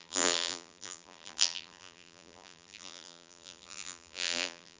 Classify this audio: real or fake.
fake